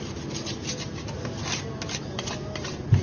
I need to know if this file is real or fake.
real